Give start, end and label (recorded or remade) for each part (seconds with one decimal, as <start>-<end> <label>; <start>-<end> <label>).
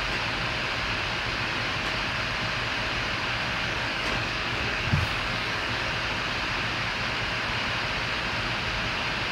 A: 0.0-3.5 recorded; 3.5-5.9 remade; 5.9-9.3 recorded